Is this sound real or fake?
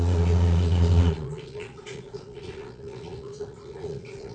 fake